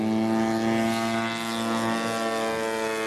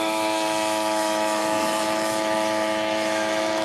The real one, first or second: first